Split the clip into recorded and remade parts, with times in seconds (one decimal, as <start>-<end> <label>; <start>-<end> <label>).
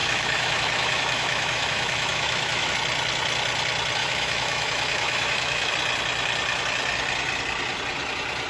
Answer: 0.0-2.7 remade; 2.7-4.0 recorded; 4.0-5.7 remade; 5.7-8.5 recorded